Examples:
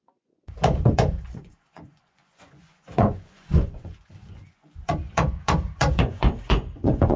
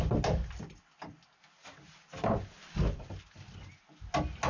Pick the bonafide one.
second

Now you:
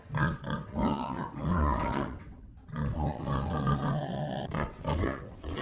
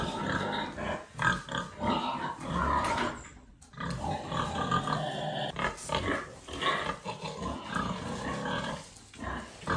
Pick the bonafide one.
second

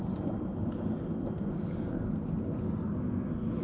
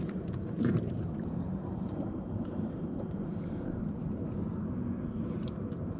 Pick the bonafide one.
first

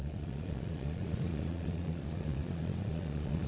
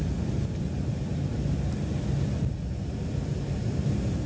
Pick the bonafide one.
second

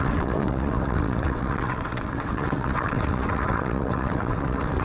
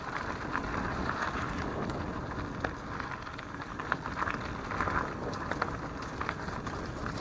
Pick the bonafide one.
second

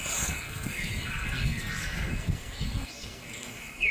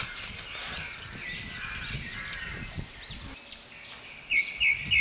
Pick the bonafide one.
second